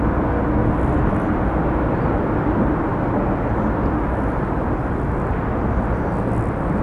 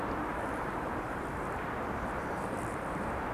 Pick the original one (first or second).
first